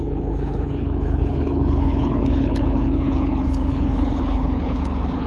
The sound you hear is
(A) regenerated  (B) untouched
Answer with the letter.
A